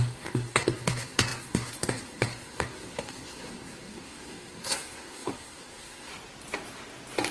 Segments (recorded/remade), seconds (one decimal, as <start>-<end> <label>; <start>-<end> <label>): 0.0-6.1 remade; 6.1-7.3 recorded